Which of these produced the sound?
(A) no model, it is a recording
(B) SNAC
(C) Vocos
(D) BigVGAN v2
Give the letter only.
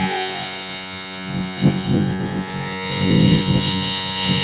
C